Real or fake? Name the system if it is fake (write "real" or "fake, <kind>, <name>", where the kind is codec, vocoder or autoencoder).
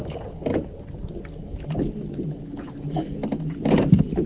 real